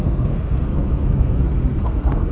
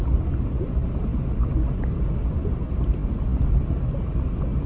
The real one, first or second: second